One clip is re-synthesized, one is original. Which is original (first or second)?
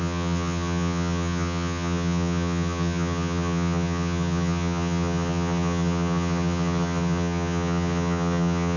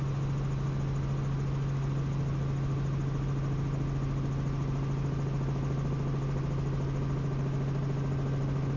second